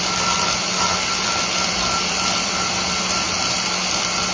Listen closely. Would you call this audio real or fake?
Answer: real